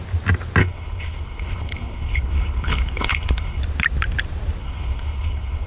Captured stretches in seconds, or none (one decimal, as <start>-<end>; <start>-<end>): 0.0-0.6; 3.6-4.6